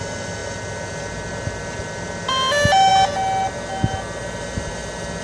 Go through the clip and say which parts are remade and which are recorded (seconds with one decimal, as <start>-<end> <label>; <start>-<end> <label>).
0.0-5.2 recorded